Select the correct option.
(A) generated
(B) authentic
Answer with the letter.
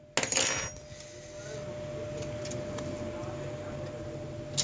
B